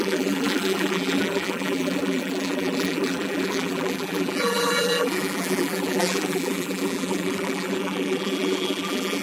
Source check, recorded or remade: remade